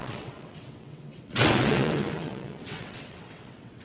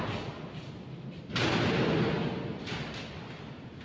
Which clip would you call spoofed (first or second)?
first